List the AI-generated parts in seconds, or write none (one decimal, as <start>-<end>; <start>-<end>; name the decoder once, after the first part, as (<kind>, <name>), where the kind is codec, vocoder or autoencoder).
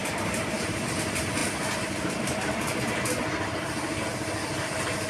0.0-0.7 (vocoder, BigVGAN v2)